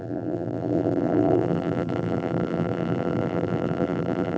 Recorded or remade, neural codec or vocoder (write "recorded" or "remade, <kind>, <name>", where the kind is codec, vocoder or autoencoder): remade, vocoder, BigVGAN v2